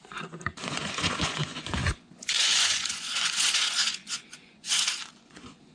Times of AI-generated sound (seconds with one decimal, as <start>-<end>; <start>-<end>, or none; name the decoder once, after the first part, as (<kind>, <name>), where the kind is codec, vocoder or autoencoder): 0.0-5.7 (vocoder, Vocos)

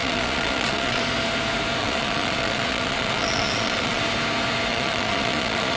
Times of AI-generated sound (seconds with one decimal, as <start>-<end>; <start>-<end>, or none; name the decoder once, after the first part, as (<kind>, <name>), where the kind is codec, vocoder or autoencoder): 0.0-1.0 (vocoder, Vocos); 1.8-4.0; 4.7-5.8

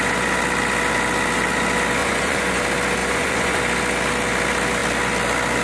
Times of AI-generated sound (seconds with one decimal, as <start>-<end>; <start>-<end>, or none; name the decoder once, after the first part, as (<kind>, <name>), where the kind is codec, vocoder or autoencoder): 2.0-2.6 (vocoder, Vocos); 3.0-3.6